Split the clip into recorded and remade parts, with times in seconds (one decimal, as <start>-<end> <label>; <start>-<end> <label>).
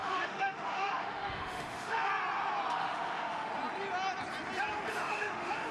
0.0-2.1 remade; 2.1-2.7 recorded; 2.7-3.5 remade; 3.5-4.9 recorded; 4.9-5.7 remade